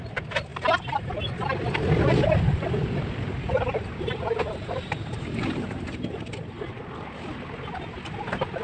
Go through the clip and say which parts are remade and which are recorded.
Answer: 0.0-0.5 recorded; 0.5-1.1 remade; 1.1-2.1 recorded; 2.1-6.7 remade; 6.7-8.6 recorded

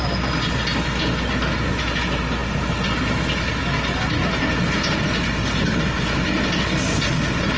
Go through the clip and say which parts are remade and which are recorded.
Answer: 0.0-7.6 recorded

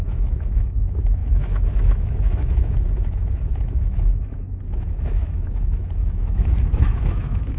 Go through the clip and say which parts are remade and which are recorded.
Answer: 0.0-7.6 remade

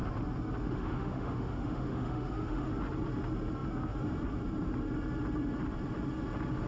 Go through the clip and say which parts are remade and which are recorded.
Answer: 0.0-0.6 recorded; 0.6-2.7 remade; 2.7-6.7 recorded

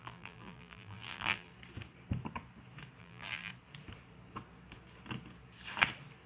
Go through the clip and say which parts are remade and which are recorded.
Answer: 0.0-1.5 remade; 1.5-3.0 recorded; 3.0-3.5 remade; 3.5-6.3 recorded

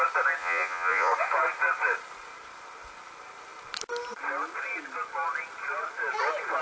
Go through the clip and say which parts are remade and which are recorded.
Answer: 0.0-0.4 recorded; 0.4-1.1 remade; 1.1-6.6 recorded

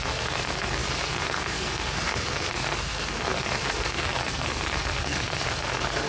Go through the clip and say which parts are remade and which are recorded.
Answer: 0.0-6.1 remade